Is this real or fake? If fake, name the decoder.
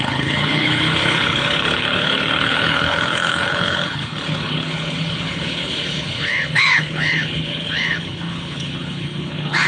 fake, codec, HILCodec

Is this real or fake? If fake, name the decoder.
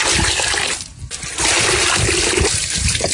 real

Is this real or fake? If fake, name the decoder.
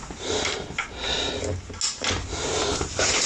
real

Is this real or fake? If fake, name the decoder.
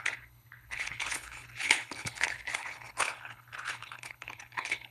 fake, codec, HILCodec